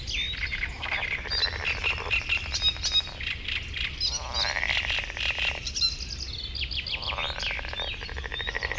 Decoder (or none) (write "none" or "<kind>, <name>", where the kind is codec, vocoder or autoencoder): none